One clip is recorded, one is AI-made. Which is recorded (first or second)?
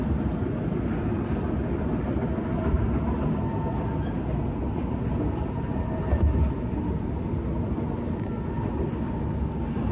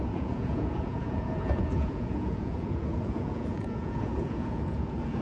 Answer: first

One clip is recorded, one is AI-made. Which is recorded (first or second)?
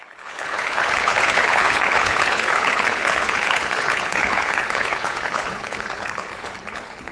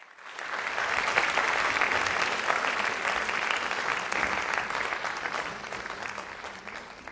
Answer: second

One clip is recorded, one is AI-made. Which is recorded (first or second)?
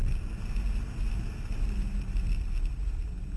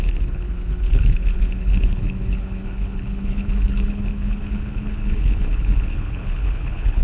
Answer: first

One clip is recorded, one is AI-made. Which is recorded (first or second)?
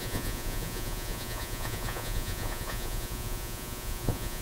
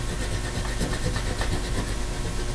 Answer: second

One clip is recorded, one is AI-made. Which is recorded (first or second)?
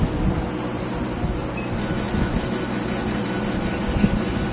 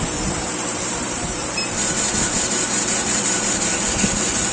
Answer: first